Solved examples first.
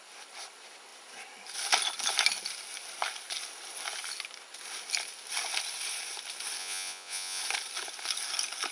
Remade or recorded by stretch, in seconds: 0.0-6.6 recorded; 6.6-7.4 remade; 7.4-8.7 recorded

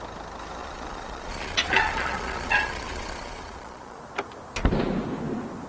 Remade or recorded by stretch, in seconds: 0.0-0.6 recorded; 0.6-4.0 remade; 4.0-5.7 recorded